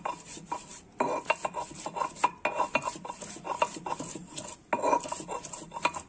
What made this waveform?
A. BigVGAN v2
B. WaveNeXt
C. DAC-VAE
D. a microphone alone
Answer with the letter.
D